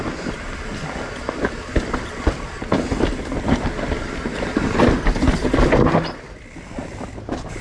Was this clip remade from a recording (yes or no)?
no